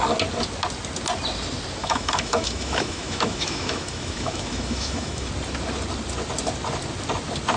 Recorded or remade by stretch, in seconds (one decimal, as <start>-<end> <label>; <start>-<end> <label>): 0.0-1.8 recorded; 1.8-5.3 remade; 5.3-7.6 recorded